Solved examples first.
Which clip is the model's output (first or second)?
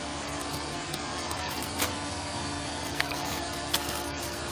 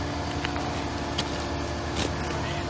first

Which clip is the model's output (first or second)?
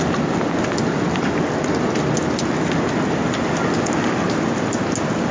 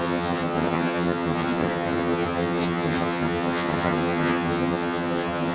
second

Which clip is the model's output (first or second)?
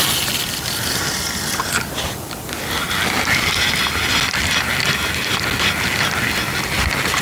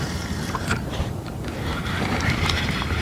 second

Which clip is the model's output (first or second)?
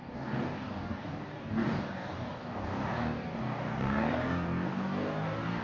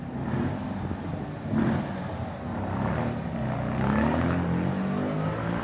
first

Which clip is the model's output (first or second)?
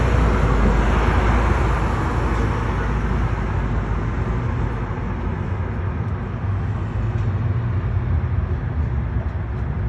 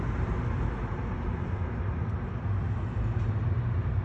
second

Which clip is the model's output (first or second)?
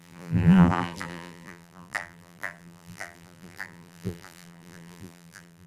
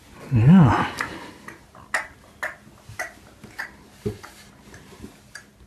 first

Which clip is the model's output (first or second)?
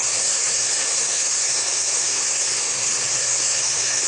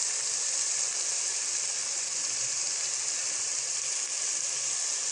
first